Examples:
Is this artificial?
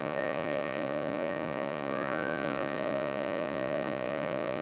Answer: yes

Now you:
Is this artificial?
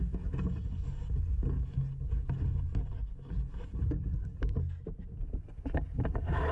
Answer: no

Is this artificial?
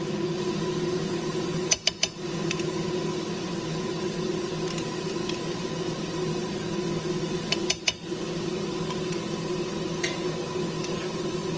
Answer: no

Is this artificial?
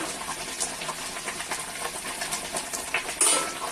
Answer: no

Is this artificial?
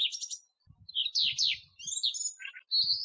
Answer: no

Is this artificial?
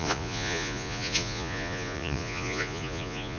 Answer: yes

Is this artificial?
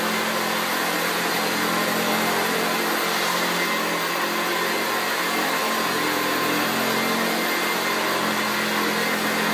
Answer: no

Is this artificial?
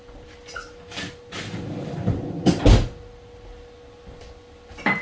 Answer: no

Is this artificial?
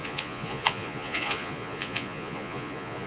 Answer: yes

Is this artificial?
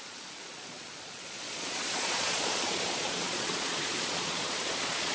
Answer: yes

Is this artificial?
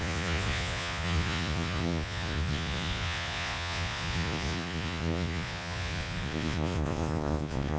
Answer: yes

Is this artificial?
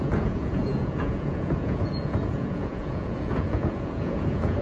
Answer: yes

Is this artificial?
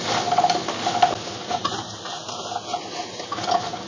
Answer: no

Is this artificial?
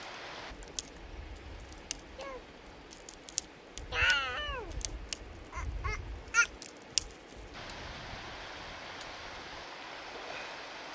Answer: no